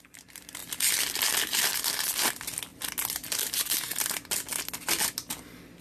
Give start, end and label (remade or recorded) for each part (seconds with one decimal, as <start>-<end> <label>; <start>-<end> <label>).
0.0-0.6 recorded; 0.6-1.5 remade; 1.5-5.8 recorded